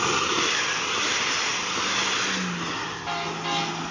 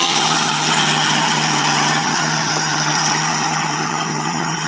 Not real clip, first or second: second